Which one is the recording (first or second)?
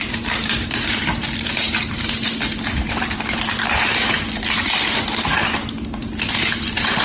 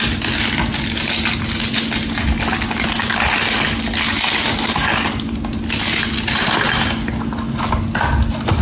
second